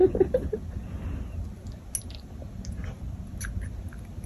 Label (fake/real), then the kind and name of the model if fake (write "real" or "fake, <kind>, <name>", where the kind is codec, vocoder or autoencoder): real